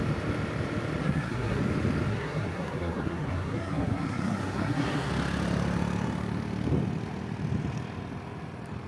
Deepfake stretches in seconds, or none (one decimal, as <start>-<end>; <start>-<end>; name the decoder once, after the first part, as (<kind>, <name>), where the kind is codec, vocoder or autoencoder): 1.0-1.6 (codec, SNAC); 2.1-5.1